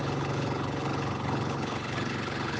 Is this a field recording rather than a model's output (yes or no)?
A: no